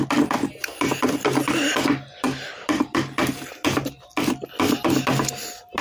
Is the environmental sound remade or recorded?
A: recorded